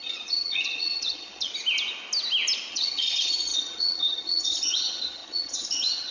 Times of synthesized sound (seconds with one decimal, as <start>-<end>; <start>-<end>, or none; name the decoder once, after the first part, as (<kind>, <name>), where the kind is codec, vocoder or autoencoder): 0.0-1.5 (vocoder, HiFi-GAN); 2.7-6.1